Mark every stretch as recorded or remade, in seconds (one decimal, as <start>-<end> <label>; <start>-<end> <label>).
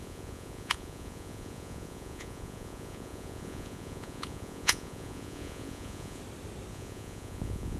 0.0-6.2 remade; 6.2-6.7 recorded; 6.7-7.8 remade